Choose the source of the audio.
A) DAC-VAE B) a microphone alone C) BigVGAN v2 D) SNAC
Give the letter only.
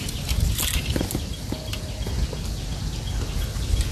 B